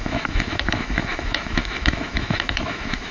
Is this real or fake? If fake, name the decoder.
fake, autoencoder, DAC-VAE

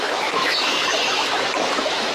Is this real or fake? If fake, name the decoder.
fake, autoencoder, DAC-VAE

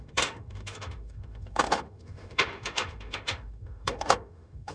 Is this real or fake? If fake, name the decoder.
fake, autoencoder, DAC-VAE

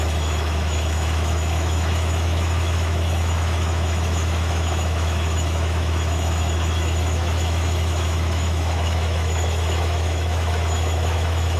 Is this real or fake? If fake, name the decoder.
fake, autoencoder, DAC-VAE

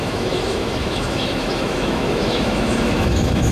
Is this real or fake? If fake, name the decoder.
fake, autoencoder, DAC-VAE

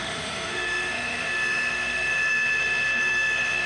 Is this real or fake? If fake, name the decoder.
fake, autoencoder, DAC-VAE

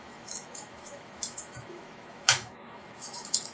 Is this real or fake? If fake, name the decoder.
fake, autoencoder, DAC-VAE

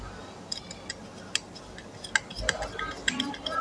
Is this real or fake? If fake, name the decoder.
real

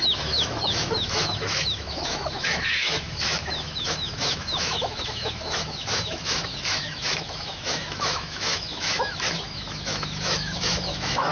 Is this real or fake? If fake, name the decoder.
fake, autoencoder, DAC-VAE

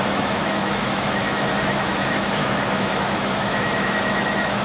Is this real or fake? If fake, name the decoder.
fake, autoencoder, DAC-VAE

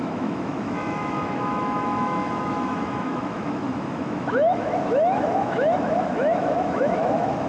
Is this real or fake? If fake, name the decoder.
fake, autoencoder, DAC-VAE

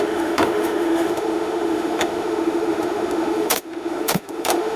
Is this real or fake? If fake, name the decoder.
fake, autoencoder, DAC-VAE